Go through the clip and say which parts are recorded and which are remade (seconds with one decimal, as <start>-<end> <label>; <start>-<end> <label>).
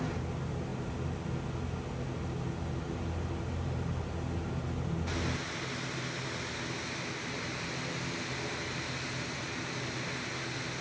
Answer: 0.0-10.8 recorded